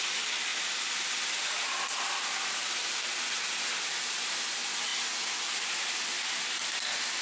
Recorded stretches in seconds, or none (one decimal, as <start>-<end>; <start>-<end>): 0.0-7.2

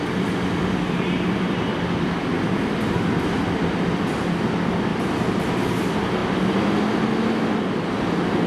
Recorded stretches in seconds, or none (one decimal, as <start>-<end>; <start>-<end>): 2.3-4.9; 5.5-8.5

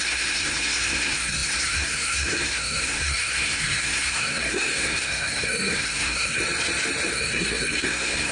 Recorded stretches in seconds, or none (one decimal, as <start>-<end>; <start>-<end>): 6.4-7.1